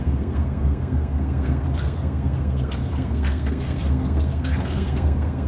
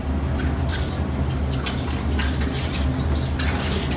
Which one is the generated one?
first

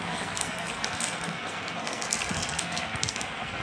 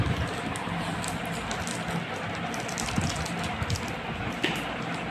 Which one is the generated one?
first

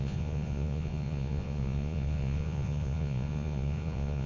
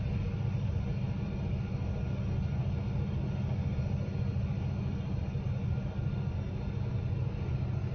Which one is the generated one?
first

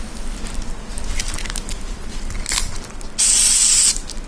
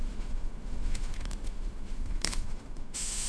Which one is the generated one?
second